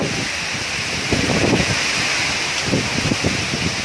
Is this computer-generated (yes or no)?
no